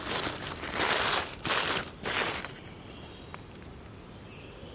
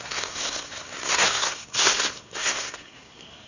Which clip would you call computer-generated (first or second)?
second